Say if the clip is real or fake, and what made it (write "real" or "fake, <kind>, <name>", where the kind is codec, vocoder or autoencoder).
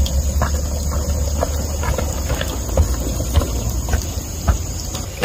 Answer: fake, vocoder, BigVGAN v2